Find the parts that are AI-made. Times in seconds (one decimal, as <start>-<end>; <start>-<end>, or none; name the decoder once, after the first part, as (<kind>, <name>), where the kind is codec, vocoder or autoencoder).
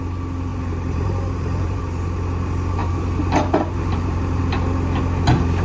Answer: 0.5-1.8 (vocoder, BigVGAN v2); 2.8-4.4